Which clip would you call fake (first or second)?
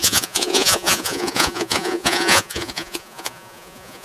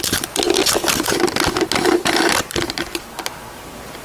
first